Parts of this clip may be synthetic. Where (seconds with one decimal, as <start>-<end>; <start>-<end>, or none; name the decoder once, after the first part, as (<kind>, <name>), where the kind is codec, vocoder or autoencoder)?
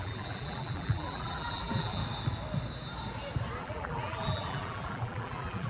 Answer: 0.0-2.0 (vocoder, BigVGAN v2); 3.6-5.7